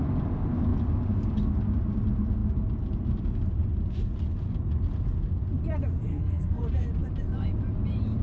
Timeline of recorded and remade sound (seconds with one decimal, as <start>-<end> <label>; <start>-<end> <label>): 0.0-6.1 recorded; 6.1-6.6 remade; 6.6-8.2 recorded